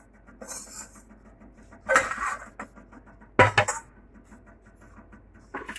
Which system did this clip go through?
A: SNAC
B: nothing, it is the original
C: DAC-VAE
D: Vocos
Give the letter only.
B